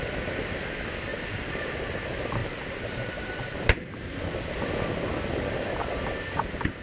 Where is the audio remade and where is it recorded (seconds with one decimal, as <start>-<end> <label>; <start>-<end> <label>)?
0.0-1.1 recorded; 1.1-1.7 remade; 1.7-2.4 recorded; 2.4-4.2 remade; 4.2-6.8 recorded